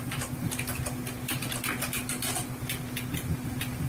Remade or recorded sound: recorded